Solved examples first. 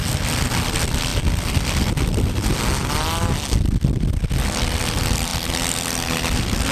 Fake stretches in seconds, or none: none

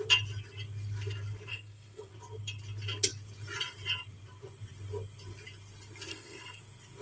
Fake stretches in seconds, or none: 1.5-2.1 (codec, SNAC); 6.1-6.6

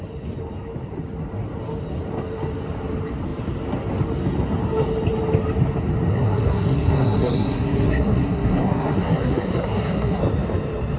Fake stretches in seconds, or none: 6.1-10.2 (codec, SNAC)

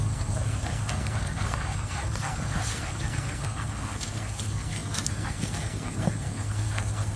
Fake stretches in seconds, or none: 0.0-7.2 (codec, SNAC)

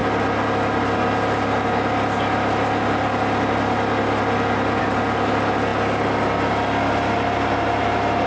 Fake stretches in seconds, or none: none

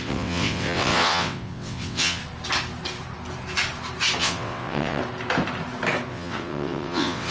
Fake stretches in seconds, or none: 0.0-2.2 (vocoder, WaveNeXt); 4.2-5.0; 6.1-7.3

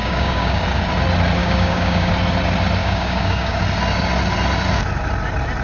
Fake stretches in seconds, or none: 0.0-0.6 (codec, DAC); 1.4-2.1; 2.8-3.6

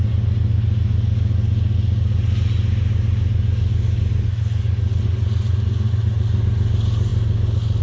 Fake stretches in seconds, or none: none